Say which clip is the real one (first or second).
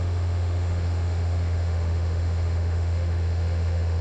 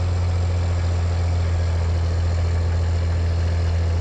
second